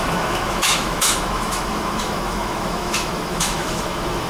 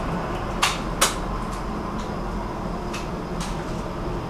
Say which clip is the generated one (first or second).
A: first